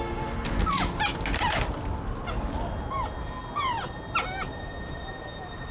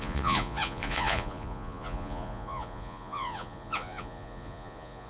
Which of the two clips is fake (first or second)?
second